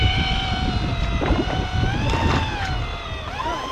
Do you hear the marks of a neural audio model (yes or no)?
no